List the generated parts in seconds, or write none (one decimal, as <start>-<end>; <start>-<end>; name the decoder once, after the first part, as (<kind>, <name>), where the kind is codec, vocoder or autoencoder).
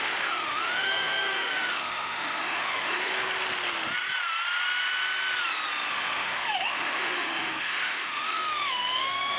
0.0-3.1 (autoencoder, DAC-VAE); 5.9-9.4